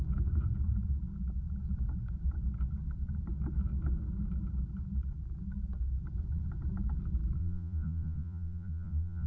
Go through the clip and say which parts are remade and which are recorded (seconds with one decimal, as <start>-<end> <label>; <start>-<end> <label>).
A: 0.0-7.4 recorded; 7.4-9.3 remade